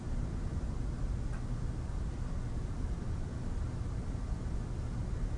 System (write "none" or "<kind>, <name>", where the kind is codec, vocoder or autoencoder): none